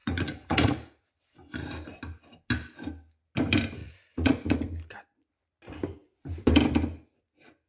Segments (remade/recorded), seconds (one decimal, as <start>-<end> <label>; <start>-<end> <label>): 0.0-1.1 remade; 1.1-3.8 recorded; 3.8-4.6 remade; 4.6-7.7 recorded